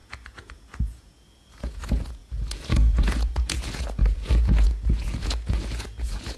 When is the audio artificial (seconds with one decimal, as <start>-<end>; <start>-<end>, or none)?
0.0-6.4